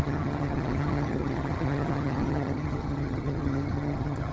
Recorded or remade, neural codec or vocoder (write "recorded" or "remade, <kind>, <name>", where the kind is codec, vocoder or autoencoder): remade, vocoder, HiFi-GAN